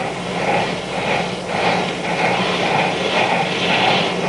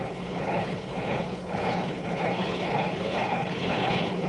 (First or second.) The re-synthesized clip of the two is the second